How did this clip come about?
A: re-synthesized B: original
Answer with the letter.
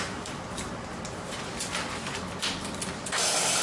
B